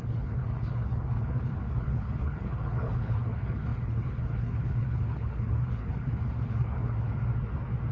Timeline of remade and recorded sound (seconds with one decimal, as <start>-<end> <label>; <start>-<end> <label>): 0.0-7.1 remade; 7.1-7.9 recorded